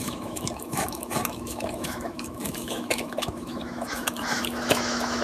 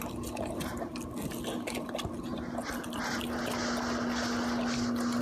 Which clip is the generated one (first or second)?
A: first